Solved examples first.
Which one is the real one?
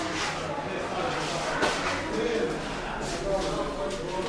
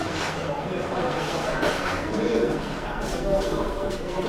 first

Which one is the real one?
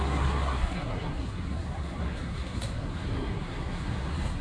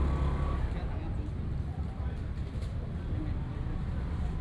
second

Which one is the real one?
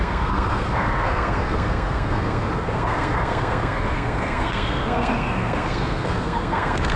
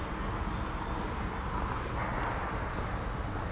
second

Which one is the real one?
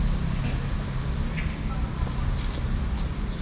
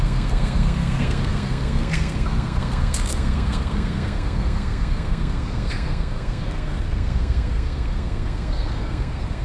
first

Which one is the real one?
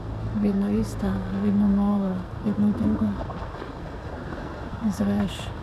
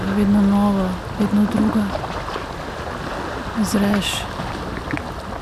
second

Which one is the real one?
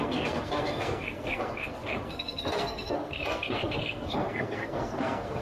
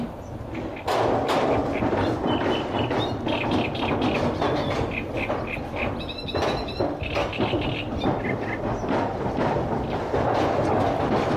second